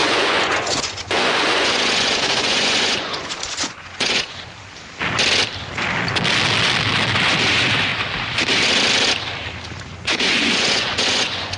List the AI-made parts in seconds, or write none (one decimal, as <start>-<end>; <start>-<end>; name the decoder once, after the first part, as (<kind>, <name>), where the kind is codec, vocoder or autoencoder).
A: 0.0-4.5 (vocoder, Vocos); 9.9-11.6